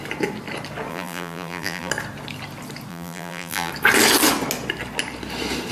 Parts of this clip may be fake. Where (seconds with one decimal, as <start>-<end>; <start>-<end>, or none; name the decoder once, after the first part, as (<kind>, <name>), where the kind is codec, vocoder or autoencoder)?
0.9-1.9 (vocoder, BigVGAN v2); 2.9-3.7